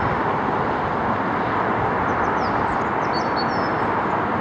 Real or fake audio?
real